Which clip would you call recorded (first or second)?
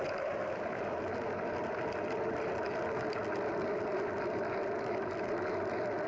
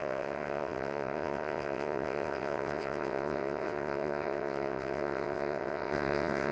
first